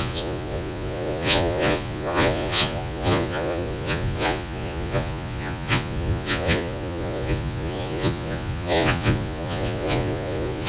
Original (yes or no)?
no